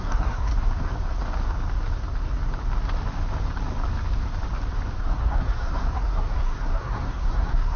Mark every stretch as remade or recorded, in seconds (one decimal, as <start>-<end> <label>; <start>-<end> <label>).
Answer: 0.0-0.5 remade; 0.5-5.0 recorded; 5.0-7.8 remade